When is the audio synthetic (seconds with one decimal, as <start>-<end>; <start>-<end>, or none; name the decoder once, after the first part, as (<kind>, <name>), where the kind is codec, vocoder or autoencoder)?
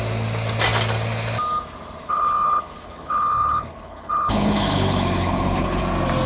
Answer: 2.0-5.8 (codec, HILCodec)